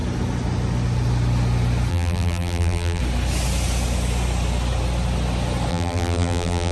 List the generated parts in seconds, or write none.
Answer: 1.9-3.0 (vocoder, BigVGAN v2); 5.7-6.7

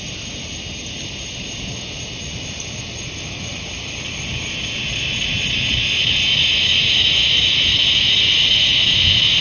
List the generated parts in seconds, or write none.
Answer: 3.5-4.2 (vocoder, BigVGAN v2)

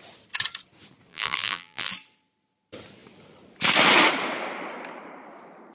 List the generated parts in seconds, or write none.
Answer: 1.1-1.9 (vocoder, BigVGAN v2)

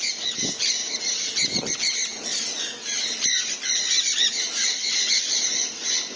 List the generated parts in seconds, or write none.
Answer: none

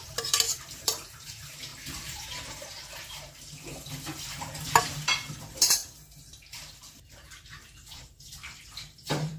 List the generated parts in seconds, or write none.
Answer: 0.0-9.4 (vocoder, BigVGAN v2)

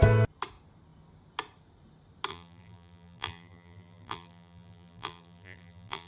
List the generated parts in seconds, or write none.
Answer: 2.3-6.1 (vocoder, BigVGAN v2)